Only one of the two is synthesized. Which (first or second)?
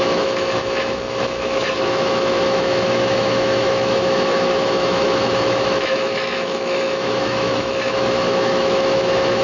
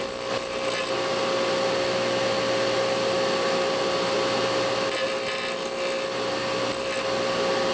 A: first